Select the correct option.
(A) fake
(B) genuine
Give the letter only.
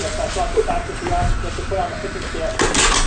B